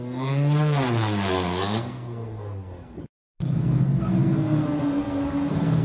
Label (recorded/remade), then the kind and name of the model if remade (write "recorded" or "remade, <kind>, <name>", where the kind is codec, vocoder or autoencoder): remade, codec, SNAC